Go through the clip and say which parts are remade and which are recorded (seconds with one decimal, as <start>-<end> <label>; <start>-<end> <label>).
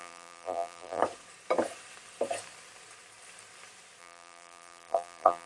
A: 0.0-1.0 remade; 1.0-4.0 recorded; 4.0-5.5 remade